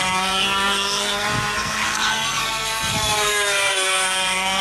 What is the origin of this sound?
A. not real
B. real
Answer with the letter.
A